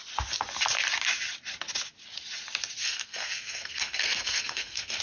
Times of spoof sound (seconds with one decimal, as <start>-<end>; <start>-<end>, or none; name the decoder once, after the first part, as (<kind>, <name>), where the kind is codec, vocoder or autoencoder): 2.8-5.0 (codec, SNAC)